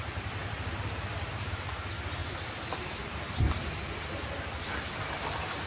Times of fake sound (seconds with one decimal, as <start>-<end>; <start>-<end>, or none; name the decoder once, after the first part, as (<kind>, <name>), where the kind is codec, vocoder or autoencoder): 0.4-1.5 (vocoder, BigVGAN v2); 2.2-3.0